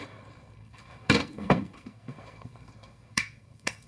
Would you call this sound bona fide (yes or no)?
no